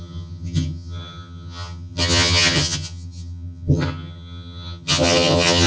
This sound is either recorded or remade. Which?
remade